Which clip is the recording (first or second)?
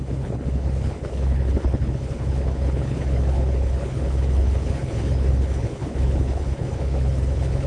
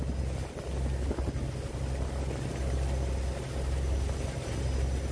second